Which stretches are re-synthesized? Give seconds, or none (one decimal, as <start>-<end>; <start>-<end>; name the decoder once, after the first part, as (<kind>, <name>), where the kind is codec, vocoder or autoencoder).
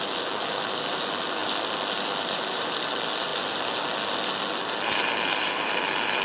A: none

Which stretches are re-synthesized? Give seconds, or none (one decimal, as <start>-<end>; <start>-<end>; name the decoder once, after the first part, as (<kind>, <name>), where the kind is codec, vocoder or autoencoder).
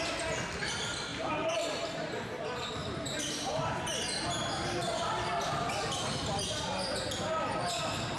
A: 1.1-2.1 (vocoder, BigVGAN v2); 2.8-3.6